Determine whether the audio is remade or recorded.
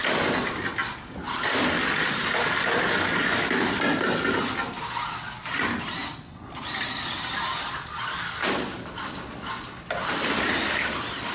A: recorded